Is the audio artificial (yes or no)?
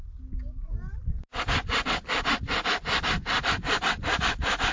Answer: no